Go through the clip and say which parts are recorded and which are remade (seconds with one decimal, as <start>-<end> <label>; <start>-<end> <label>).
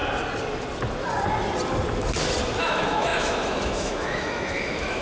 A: 0.0-2.6 recorded; 2.6-5.0 remade